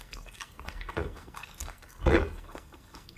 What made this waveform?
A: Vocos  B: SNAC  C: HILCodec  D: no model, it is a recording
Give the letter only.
B